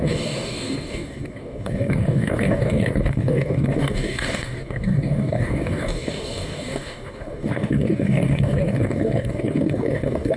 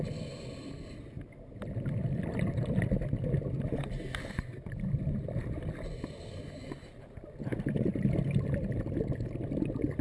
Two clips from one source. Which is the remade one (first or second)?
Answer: first